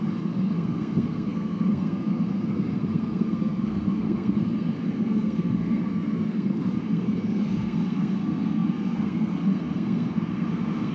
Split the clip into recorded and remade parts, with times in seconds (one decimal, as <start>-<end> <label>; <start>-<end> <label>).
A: 0.0-10.9 remade